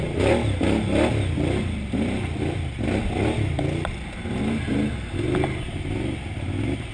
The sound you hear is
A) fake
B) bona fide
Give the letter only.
B